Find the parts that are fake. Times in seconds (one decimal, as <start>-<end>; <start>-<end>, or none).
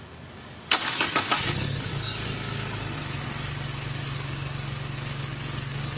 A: 0.0-6.0